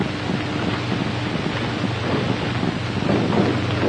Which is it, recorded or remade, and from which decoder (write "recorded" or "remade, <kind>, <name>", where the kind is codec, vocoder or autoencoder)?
recorded